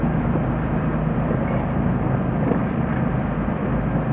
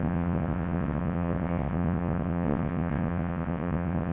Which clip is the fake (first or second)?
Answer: second